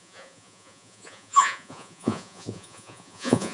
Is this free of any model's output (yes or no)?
no